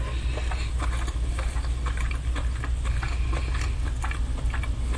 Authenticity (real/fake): real